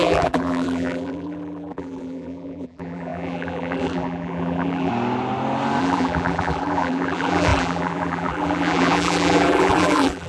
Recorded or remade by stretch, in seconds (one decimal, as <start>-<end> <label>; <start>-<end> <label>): 0.0-4.9 remade; 4.9-5.8 recorded; 5.8-10.3 remade